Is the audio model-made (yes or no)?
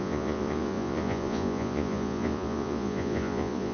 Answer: yes